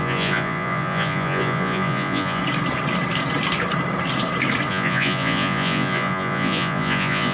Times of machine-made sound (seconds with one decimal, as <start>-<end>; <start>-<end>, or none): 0.0-2.4; 4.7-7.3